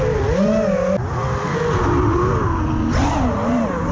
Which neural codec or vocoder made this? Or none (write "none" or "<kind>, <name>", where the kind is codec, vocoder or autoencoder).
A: none